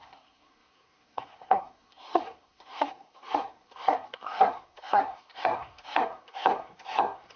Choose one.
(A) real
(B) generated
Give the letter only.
B